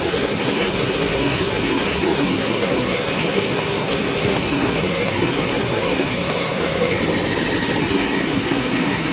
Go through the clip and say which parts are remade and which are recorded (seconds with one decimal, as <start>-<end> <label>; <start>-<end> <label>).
0.0-7.0 remade; 7.0-7.8 recorded; 7.8-9.1 remade